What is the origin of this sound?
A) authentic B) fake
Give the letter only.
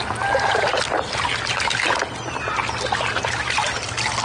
A